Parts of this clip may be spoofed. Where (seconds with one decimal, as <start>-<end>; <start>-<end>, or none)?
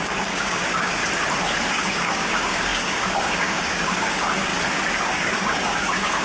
0.0-1.0; 1.7-4.5; 5.0-6.2